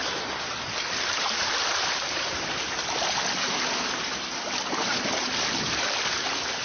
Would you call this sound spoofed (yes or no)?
no